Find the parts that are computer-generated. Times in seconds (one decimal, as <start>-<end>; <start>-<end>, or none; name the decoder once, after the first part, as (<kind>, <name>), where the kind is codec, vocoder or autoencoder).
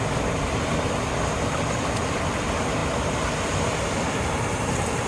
none